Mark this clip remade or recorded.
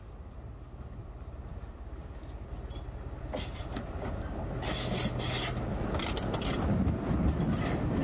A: recorded